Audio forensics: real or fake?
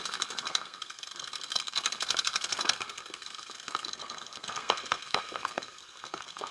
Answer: fake